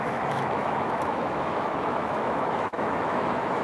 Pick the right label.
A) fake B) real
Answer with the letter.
A